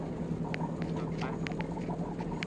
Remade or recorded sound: recorded